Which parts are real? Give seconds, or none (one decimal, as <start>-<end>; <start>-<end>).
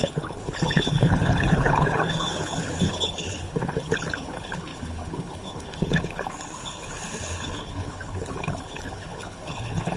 none